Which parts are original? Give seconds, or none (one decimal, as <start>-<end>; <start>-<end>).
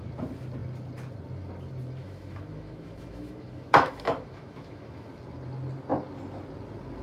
0.0-2.0; 5.1-7.0